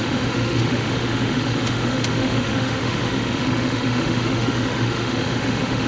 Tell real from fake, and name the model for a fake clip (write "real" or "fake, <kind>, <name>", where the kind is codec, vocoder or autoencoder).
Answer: fake, autoencoder, DAC-VAE